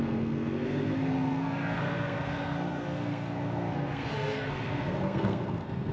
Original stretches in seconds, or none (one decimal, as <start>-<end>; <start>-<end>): none